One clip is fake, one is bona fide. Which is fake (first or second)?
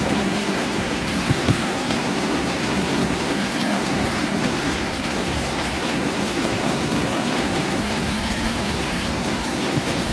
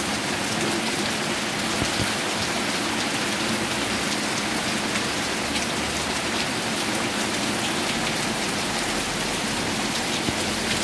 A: first